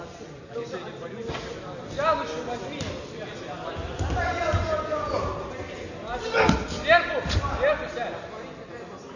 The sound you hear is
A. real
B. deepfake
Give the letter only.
A